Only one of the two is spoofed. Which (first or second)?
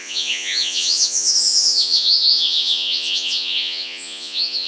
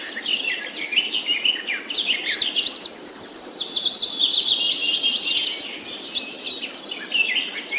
first